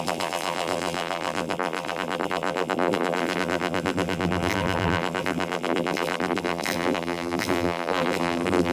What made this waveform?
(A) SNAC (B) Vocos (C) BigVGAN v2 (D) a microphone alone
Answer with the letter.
C